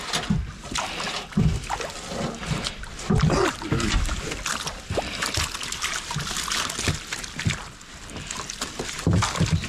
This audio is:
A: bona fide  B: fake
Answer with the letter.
A